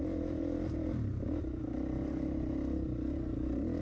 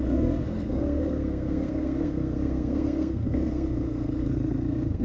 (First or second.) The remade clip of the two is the second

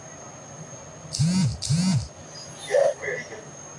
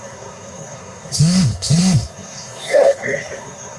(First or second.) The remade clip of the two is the second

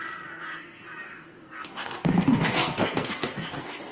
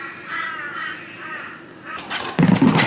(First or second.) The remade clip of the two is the first